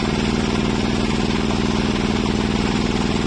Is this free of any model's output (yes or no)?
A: yes